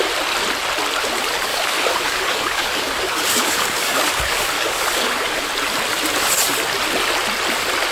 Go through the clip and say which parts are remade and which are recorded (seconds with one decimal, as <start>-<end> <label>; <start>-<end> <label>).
0.0-1.5 recorded; 1.5-5.4 remade; 5.4-7.9 recorded